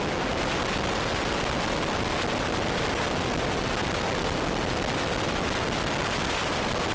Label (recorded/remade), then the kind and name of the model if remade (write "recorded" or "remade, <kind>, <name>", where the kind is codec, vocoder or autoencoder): recorded